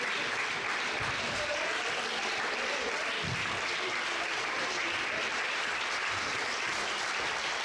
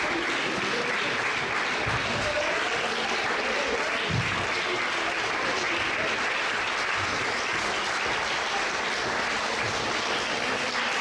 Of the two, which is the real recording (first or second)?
second